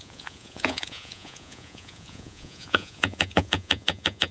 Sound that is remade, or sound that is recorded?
remade